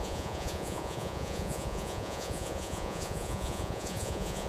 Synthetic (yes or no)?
yes